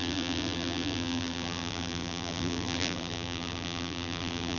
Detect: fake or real fake